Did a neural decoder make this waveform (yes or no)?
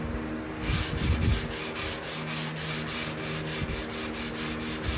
no